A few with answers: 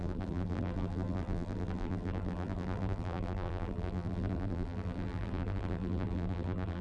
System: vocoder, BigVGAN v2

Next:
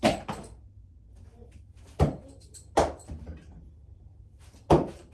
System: vocoder, BigVGAN v2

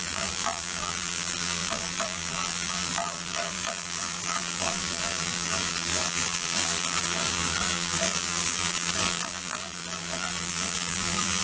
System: vocoder, BigVGAN v2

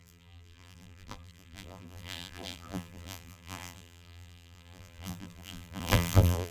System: vocoder, BigVGAN v2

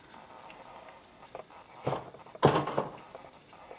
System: none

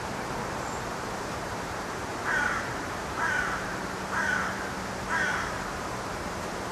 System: vocoder, BigVGAN v2